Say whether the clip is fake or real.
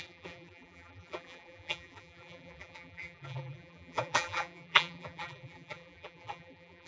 fake